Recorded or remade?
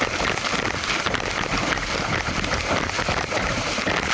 recorded